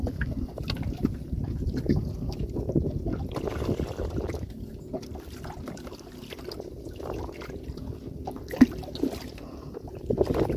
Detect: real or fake real